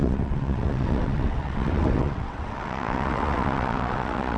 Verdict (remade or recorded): remade